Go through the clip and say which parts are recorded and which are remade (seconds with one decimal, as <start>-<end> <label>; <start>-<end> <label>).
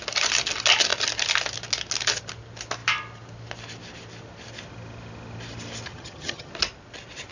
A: 0.0-5.9 recorded; 5.9-6.5 remade; 6.5-7.3 recorded